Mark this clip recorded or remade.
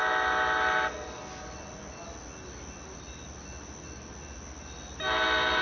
recorded